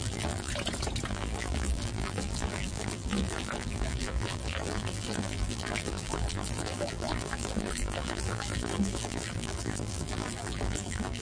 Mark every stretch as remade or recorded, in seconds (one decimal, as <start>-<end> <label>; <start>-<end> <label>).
0.0-0.5 remade; 0.5-1.1 recorded; 1.1-11.2 remade